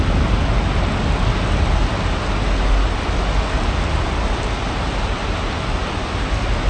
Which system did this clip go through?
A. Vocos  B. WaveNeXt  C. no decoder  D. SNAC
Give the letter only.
C